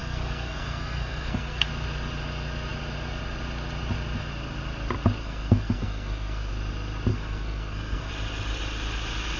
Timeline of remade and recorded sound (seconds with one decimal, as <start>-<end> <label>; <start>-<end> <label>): 0.0-1.7 remade; 1.7-5.2 recorded; 5.2-6.5 remade; 6.5-7.1 recorded; 7.1-8.1 remade; 8.1-9.4 recorded